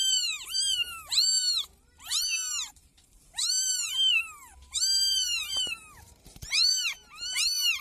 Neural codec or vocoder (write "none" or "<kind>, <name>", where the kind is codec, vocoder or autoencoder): vocoder, BigVGAN v2